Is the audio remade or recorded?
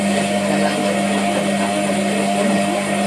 recorded